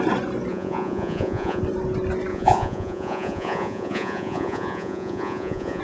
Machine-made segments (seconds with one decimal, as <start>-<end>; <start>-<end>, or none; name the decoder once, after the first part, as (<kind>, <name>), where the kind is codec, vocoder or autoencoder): 0.5-1.6 (vocoder, Vocos); 2.3-5.8